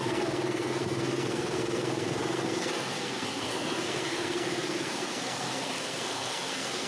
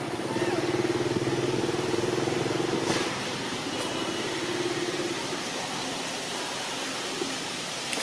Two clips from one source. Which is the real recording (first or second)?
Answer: second